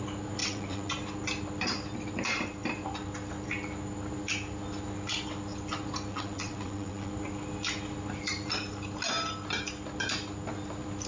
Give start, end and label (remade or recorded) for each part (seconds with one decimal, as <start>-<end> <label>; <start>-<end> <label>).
0.0-0.4 recorded; 0.4-0.9 remade; 0.9-6.1 recorded; 6.1-7.1 remade; 7.1-11.1 recorded